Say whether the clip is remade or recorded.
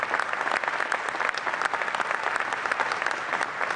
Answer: recorded